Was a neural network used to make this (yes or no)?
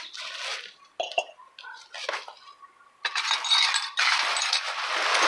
no